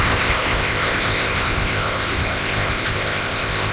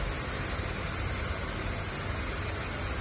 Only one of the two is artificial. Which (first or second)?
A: first